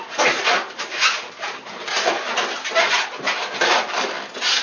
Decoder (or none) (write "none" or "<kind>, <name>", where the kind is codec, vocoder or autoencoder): none